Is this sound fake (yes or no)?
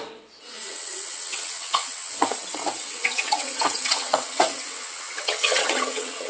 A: yes